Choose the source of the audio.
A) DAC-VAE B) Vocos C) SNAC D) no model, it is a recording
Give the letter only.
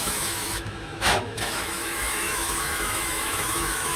A